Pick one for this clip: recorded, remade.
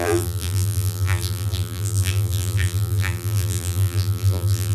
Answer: remade